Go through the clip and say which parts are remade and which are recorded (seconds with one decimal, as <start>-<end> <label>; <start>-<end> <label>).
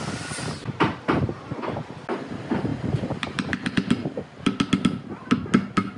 0.0-6.0 recorded